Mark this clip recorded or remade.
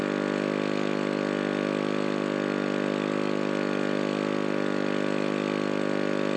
recorded